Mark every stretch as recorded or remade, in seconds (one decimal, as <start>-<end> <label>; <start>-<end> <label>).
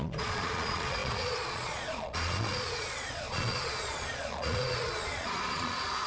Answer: 0.0-6.1 remade